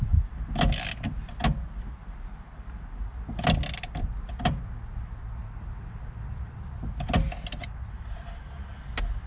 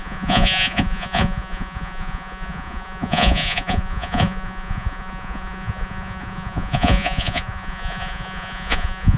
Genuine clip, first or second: first